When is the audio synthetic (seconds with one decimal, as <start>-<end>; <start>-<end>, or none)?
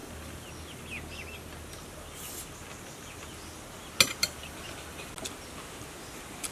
0.0-0.5; 4.2-5.1